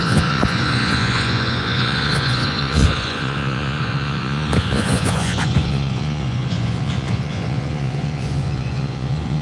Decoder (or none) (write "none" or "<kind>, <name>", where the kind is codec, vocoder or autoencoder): vocoder, Vocos